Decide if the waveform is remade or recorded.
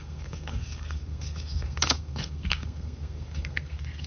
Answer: remade